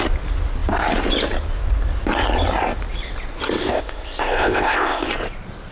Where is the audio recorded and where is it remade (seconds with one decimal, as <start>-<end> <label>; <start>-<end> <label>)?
0.0-3.6 recorded; 3.6-5.1 remade; 5.1-5.7 recorded